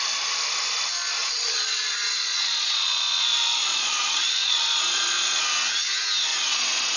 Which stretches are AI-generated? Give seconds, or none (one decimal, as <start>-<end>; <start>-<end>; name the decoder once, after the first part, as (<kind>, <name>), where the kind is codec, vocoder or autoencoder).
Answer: 1.2-5.4 (vocoder, Vocos); 6.3-7.0